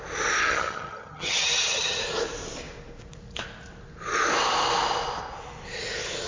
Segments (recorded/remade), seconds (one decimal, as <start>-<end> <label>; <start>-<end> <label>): 0.0-0.4 recorded; 0.4-2.0 remade; 2.0-6.3 recorded